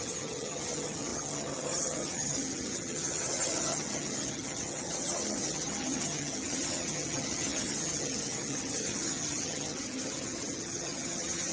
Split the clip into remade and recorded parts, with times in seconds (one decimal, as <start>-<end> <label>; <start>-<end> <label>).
0.0-11.5 remade